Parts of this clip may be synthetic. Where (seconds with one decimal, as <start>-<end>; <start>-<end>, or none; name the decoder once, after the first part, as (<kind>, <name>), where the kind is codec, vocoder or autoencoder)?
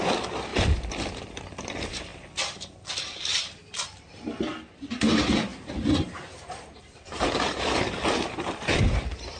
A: 0.0-5.5 (vocoder, BigVGAN v2); 6.8-9.4